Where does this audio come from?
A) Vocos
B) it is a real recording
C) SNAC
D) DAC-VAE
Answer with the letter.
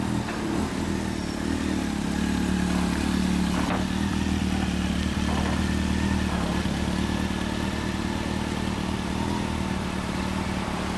B